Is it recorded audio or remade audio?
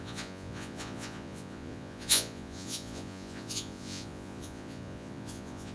remade